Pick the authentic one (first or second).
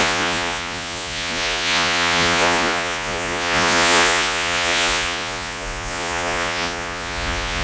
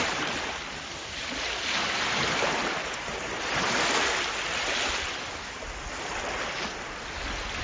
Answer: second